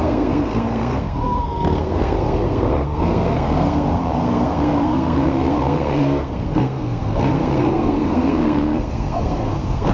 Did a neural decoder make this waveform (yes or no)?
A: yes